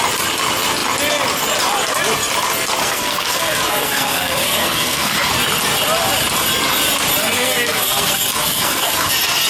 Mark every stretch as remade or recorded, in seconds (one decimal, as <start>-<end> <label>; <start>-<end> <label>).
0.0-2.8 recorded; 2.8-5.3 remade; 5.3-7.2 recorded; 7.2-9.1 remade; 9.1-9.5 recorded